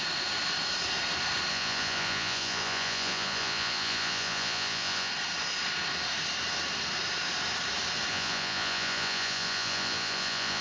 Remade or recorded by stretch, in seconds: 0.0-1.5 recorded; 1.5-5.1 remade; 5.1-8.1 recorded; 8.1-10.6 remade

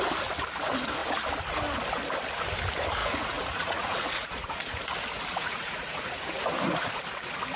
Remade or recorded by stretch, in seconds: 0.0-3.0 recorded; 3.0-4.8 remade; 4.8-5.3 recorded; 5.3-7.0 remade; 7.0-7.6 recorded